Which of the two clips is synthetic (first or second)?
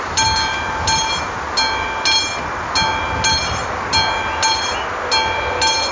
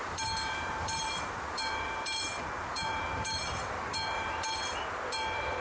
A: second